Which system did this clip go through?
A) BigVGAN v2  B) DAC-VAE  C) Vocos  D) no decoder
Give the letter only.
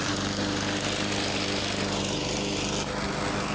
D